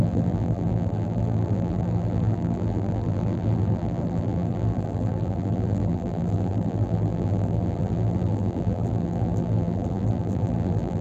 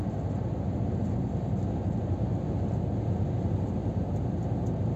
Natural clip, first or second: second